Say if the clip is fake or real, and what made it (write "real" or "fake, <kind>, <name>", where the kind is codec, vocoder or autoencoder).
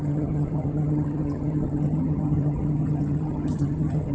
fake, vocoder, HiFi-GAN